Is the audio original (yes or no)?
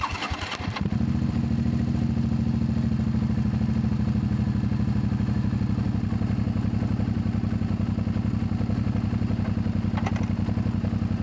yes